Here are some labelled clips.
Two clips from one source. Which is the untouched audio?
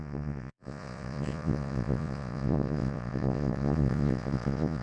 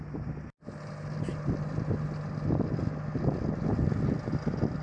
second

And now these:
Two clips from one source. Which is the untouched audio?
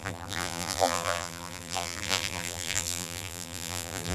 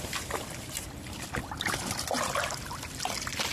second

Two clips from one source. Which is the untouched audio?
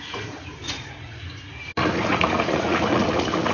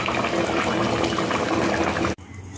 second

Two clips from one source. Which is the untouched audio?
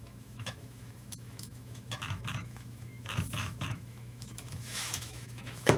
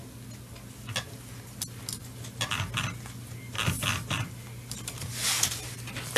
second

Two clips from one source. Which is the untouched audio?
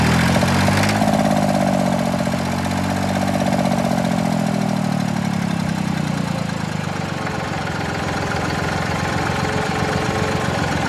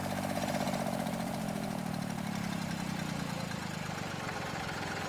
first